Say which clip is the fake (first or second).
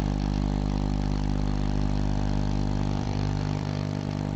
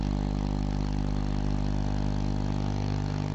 first